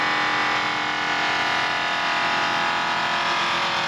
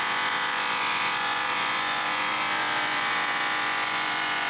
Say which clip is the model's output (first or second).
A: second